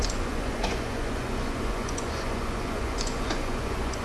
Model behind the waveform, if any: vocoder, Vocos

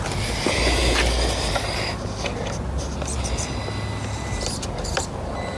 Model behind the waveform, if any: none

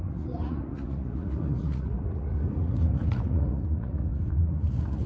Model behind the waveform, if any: vocoder, Vocos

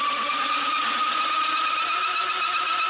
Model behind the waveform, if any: none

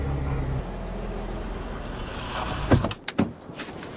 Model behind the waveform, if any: none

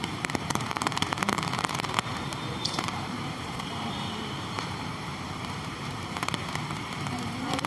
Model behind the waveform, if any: vocoder, BigVGAN v2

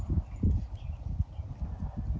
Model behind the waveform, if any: none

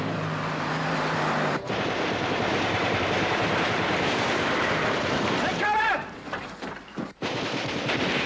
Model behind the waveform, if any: vocoder, BigVGAN v2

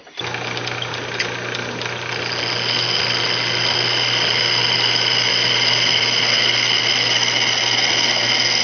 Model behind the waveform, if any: none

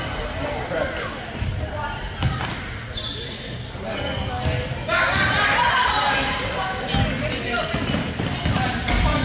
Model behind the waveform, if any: none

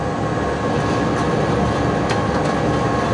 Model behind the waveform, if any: none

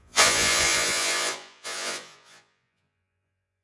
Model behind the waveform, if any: vocoder, Vocos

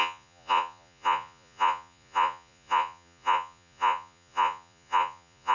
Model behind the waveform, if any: vocoder, Vocos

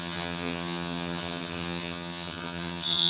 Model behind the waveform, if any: vocoder, HiFi-GAN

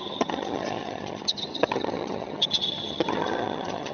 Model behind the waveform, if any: vocoder, HiFi-GAN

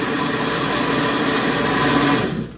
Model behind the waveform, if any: none